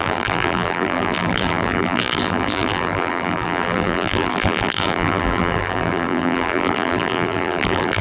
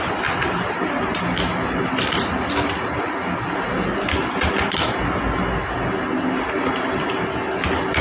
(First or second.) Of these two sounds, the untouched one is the second